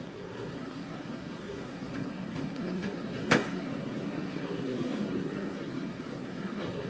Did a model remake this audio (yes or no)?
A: yes